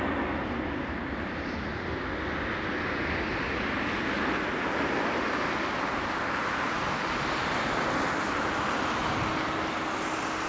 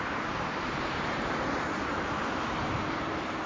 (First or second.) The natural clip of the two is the first